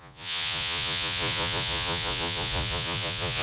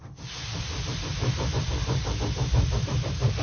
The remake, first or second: first